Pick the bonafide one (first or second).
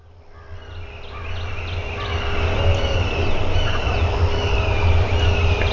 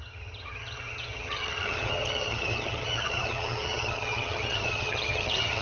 first